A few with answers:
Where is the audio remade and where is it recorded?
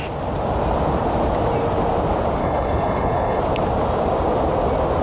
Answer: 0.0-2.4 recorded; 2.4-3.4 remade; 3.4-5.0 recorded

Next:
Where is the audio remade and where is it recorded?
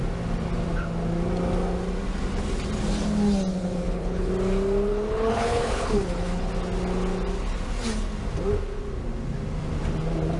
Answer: 0.0-3.5 recorded; 3.5-4.3 remade; 4.3-4.9 recorded; 4.9-6.5 remade; 6.5-10.4 recorded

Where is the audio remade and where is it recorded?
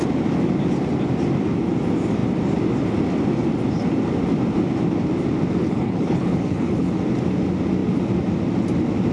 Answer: 0.0-5.6 recorded; 5.6-7.0 remade; 7.0-9.1 recorded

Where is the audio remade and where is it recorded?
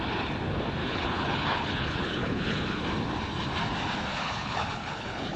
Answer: 0.0-0.8 recorded; 0.8-2.8 remade; 2.8-4.1 recorded; 4.1-5.4 remade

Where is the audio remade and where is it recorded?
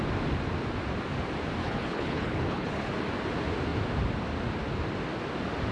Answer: 0.0-1.6 recorded; 1.6-2.9 remade; 2.9-5.7 recorded